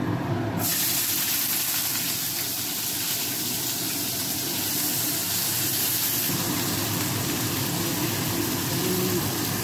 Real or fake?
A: real